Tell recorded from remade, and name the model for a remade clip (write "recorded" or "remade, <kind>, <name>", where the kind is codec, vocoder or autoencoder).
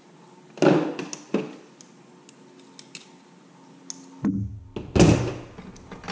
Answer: recorded